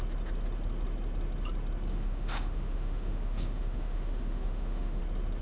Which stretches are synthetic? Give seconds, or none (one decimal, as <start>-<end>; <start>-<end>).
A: 1.9-5.0